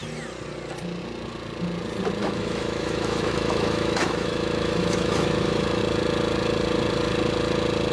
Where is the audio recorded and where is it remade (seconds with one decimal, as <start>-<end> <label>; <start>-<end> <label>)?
0.0-2.2 recorded; 2.2-5.8 remade; 5.8-7.9 recorded